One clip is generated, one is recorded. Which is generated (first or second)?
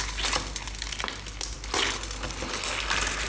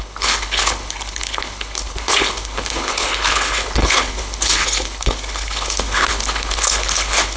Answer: second